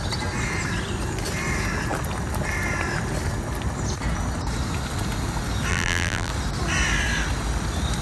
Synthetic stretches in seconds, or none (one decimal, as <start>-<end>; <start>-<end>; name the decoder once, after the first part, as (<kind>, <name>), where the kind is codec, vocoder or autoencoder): 5.7-6.3 (vocoder, BigVGAN v2)